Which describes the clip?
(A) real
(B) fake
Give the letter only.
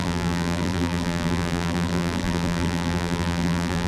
B